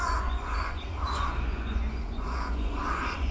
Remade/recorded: remade